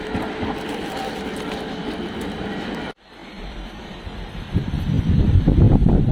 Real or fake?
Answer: fake